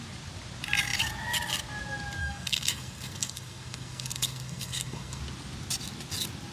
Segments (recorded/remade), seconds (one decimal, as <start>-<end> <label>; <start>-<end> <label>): 0.0-2.2 recorded; 2.2-5.2 remade; 5.2-6.5 recorded